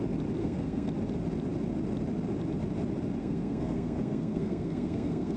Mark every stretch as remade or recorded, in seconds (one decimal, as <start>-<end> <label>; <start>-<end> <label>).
0.0-0.4 recorded; 0.4-0.9 remade; 0.9-3.2 recorded; 3.2-5.4 remade

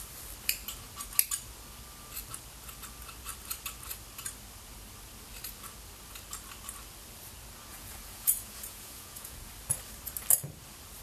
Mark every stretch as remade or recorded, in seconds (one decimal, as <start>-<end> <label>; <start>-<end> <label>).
0.0-7.7 recorded; 7.7-9.5 remade; 9.5-11.0 recorded